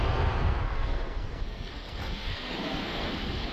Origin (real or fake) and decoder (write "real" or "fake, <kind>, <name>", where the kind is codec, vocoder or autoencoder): fake, codec, SNAC